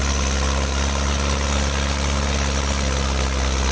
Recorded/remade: recorded